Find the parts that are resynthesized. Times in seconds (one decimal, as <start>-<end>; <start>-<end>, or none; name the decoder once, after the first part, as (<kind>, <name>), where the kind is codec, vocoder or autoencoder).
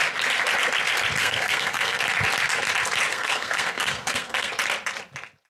1.2-2.0 (codec, SNAC); 3.1-4.5